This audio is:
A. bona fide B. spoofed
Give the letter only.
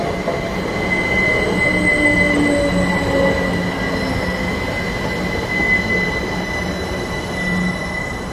A